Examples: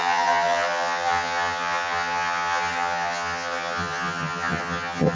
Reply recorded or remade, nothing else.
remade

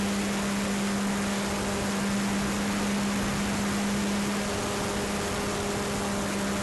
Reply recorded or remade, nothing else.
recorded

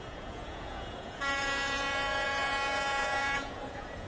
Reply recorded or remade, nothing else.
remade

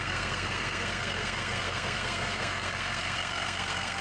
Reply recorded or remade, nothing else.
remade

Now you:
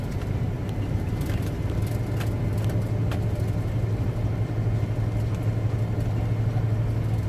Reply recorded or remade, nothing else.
recorded